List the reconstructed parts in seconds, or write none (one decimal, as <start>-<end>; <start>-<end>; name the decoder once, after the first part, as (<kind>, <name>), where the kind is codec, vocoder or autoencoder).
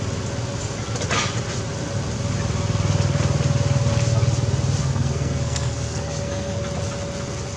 4.8-6.6 (codec, SNAC)